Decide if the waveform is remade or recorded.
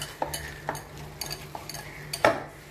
recorded